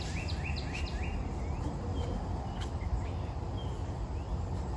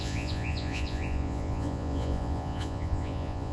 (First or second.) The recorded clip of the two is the first